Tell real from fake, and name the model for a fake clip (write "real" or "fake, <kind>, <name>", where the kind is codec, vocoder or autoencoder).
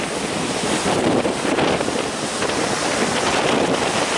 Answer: real